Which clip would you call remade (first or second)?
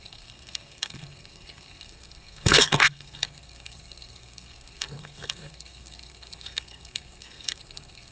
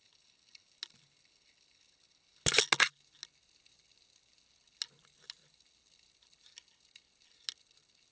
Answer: first